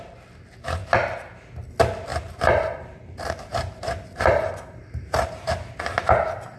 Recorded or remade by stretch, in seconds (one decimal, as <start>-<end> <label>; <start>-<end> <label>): 0.0-2.1 recorded; 2.1-5.5 remade; 5.5-6.6 recorded